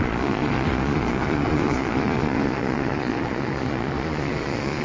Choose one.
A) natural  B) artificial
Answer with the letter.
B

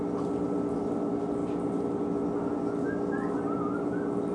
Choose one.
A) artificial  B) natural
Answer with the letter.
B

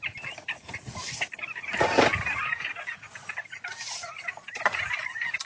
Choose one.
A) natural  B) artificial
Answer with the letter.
A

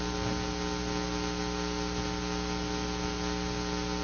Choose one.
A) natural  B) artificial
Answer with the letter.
A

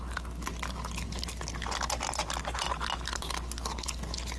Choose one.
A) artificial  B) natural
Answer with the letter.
B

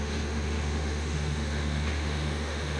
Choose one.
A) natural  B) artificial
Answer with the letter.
B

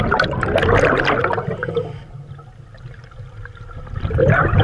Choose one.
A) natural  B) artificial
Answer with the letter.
A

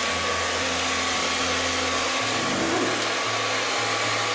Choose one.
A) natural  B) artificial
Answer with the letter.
A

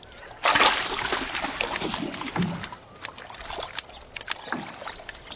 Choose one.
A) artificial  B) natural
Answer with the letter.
B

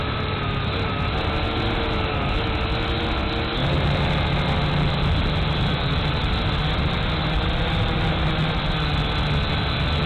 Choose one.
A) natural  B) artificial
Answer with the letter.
A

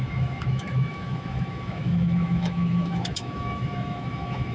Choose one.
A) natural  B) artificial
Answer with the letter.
B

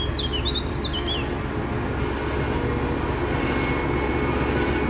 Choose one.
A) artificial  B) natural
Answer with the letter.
B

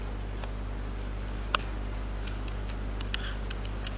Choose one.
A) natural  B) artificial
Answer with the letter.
A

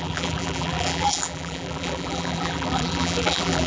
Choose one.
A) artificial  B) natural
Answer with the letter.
A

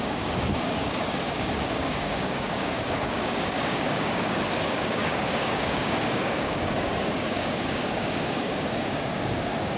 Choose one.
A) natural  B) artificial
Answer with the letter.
B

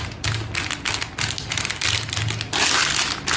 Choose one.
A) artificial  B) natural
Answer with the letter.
B